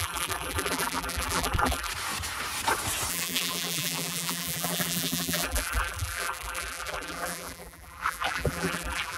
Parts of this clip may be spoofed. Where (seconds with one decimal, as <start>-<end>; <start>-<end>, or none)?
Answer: 0.0-1.9; 3.1-9.2